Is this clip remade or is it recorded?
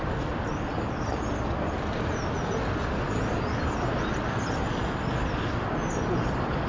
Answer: recorded